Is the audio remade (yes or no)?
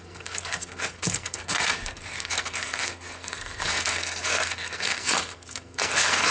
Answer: yes